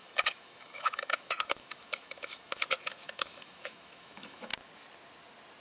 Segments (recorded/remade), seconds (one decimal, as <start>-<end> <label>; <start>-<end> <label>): 0.0-4.5 remade; 4.5-5.6 recorded